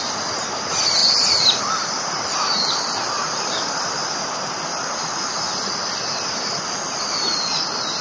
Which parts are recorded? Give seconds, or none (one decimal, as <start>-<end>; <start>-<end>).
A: 0.0-8.0